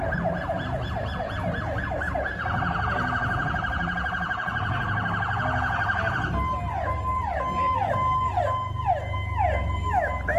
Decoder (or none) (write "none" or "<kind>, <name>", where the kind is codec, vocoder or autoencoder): none